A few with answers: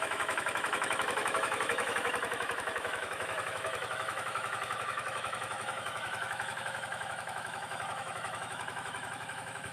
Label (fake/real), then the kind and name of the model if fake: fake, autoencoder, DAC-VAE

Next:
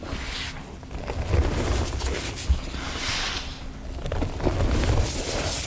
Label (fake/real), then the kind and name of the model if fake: real